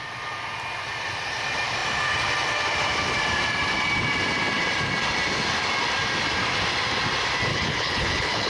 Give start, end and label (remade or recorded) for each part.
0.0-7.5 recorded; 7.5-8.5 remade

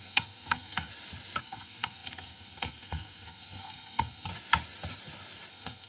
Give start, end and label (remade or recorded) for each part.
0.0-0.9 remade; 0.9-1.4 recorded; 1.4-4.3 remade; 4.3-5.5 recorded; 5.5-5.9 remade

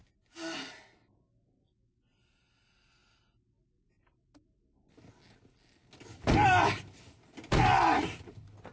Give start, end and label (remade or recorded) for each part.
0.0-8.7 recorded

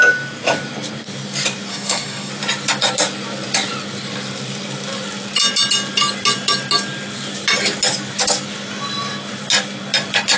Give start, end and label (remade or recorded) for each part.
0.0-1.7 recorded; 1.7-2.3 remade; 2.3-10.4 recorded

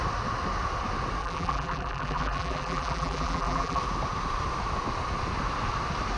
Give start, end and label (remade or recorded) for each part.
0.0-1.2 recorded; 1.2-3.8 remade; 3.8-6.2 recorded

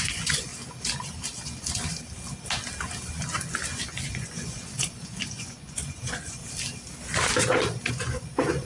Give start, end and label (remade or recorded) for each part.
0.0-0.5 remade; 0.5-4.1 recorded; 4.1-6.4 remade; 6.4-7.9 recorded; 7.9-8.6 remade

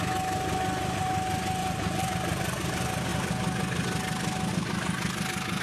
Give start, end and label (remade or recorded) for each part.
0.0-1.6 recorded; 1.6-2.1 remade; 2.1-5.6 recorded